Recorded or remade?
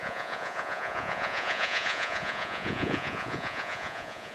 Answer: remade